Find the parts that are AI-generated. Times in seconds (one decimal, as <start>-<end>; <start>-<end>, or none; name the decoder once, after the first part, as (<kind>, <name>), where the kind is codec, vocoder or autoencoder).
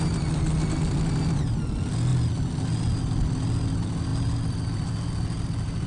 none